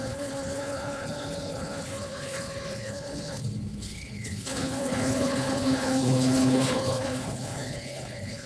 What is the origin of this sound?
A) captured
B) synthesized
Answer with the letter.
B